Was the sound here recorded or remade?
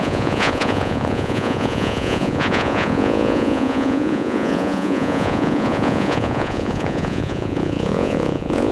remade